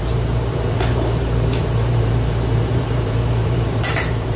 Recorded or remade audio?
remade